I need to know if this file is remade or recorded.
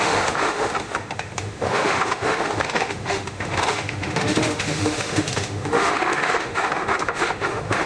remade